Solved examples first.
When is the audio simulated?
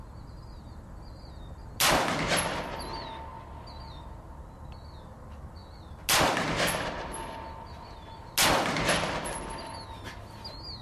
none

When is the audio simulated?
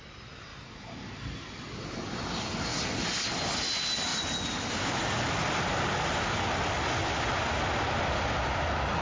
0.5-1.2 (vocoder, BigVGAN v2)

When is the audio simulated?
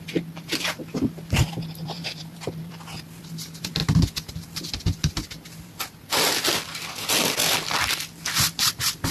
0.0-3.8 (vocoder, BigVGAN v2); 4.3-7.4; 8.6-9.1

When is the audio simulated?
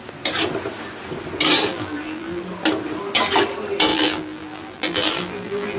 1.7-2.4 (vocoder, BigVGAN v2); 3.9-5.8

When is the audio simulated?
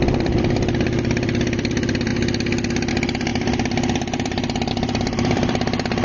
0.0-2.1 (vocoder, BigVGAN v2); 2.9-6.0